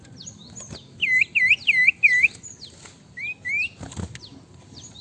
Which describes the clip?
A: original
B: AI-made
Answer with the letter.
A